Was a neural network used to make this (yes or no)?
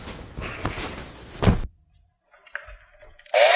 no